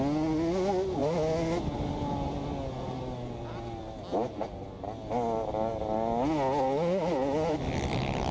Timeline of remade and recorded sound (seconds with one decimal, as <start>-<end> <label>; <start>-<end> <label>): 0.0-8.3 recorded